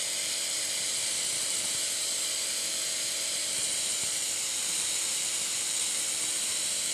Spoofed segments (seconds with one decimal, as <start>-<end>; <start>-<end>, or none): 0.0-6.9